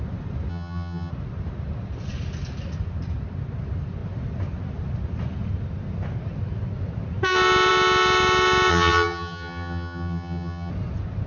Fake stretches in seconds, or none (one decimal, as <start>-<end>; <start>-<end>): 0.5-1.1; 8.7-10.7